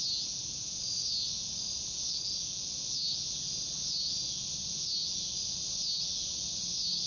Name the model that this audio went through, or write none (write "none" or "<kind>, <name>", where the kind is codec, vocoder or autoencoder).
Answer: none